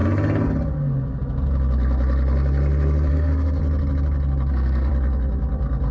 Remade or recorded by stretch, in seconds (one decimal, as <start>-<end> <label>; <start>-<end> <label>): 0.0-3.1 recorded; 3.1-3.6 remade; 3.6-4.5 recorded; 4.5-4.9 remade; 4.9-5.9 recorded